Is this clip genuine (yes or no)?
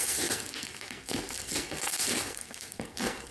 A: no